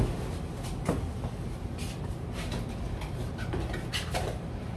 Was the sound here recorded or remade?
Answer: recorded